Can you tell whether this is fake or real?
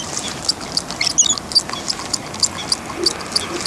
real